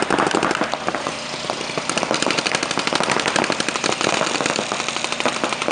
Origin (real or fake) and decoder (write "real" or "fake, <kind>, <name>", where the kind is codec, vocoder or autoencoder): fake, vocoder, BigVGAN v2